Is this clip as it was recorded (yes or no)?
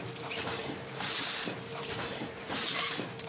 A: no